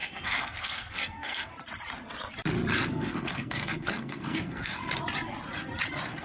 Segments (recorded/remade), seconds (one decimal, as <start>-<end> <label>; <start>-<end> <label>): 0.0-1.5 remade; 1.5-2.9 recorded; 2.9-4.8 remade; 4.8-6.2 recorded